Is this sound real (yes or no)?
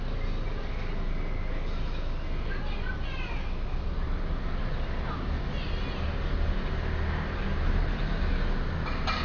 yes